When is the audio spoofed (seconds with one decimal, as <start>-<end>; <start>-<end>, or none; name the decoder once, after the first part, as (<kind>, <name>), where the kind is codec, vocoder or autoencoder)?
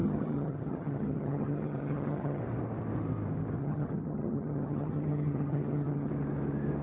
0.0-2.4 (vocoder, HiFi-GAN); 3.6-6.1